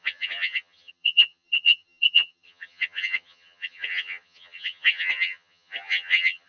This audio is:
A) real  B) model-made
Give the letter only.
B